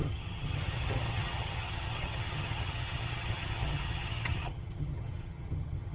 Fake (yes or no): yes